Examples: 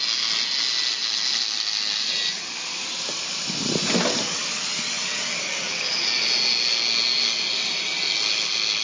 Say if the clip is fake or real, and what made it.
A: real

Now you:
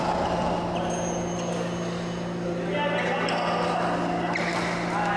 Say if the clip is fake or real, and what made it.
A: real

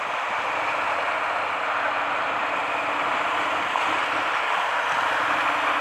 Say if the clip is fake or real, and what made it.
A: real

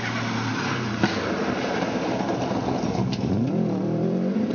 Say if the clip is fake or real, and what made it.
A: real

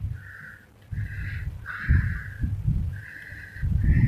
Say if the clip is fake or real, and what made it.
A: fake, vocoder, BigVGAN v2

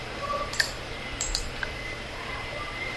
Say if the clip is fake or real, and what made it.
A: fake, vocoder, BigVGAN v2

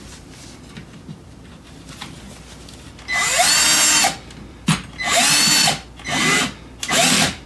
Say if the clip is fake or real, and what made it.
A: real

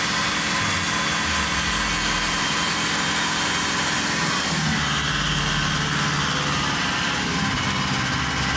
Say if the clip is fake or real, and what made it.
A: real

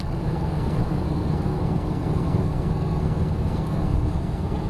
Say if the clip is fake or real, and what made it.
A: fake, codec, SNAC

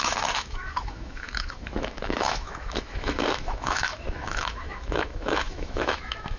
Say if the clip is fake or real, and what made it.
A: fake, autoencoder, DAC-VAE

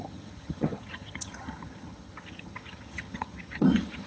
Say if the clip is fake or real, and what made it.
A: fake, vocoder, HiFi-GAN